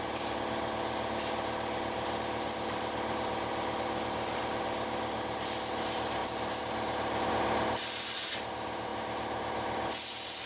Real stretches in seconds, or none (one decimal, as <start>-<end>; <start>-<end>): 0.0-10.5